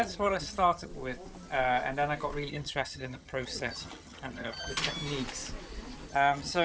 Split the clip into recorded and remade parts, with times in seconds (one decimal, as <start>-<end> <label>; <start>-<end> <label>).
0.0-0.9 remade; 0.9-2.5 recorded; 2.5-4.7 remade; 4.7-6.1 recorded; 6.1-6.6 remade